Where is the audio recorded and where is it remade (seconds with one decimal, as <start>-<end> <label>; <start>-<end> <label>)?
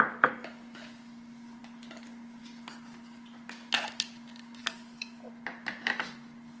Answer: 0.0-4.6 recorded; 4.6-5.3 remade; 5.3-6.6 recorded